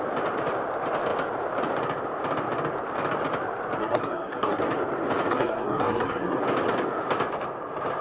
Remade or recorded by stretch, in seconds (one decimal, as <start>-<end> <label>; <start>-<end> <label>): 0.0-3.8 recorded; 3.8-4.6 remade; 4.6-5.3 recorded; 5.3-6.4 remade; 6.4-8.0 recorded